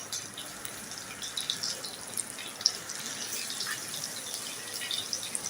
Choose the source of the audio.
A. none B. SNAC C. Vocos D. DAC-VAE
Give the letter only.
A